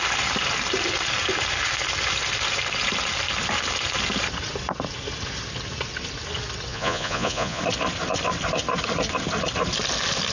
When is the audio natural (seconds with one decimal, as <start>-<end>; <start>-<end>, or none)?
0.0-6.7; 7.6-10.3

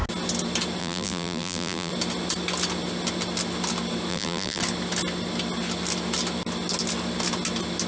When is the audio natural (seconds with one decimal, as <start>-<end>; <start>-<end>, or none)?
0.0-0.8; 1.9-4.1; 4.6-7.9